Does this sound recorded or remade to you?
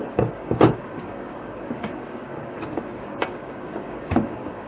remade